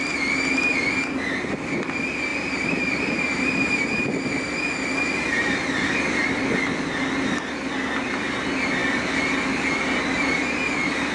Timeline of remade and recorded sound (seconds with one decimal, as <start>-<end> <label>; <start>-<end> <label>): 0.0-2.3 recorded; 2.3-3.8 remade; 3.8-11.1 recorded